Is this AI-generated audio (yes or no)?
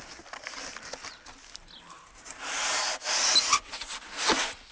no